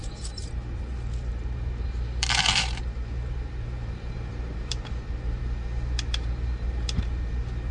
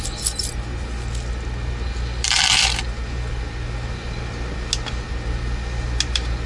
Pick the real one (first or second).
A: second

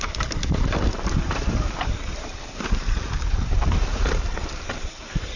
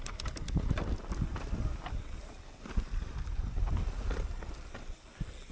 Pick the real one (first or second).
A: second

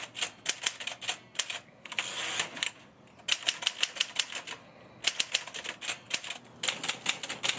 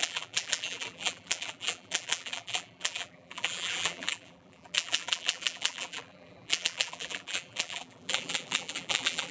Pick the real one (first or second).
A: first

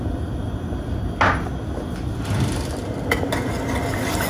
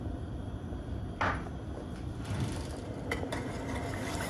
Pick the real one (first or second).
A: first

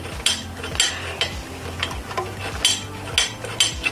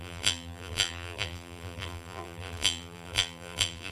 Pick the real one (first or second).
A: first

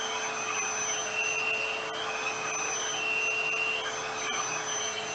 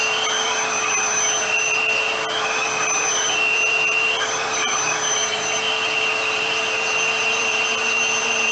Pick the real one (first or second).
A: first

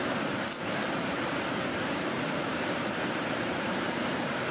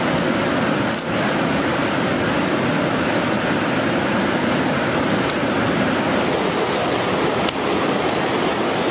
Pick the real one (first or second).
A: second